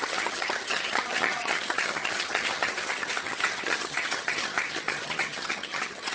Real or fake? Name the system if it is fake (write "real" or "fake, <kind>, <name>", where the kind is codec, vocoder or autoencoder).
fake, vocoder, HiFi-GAN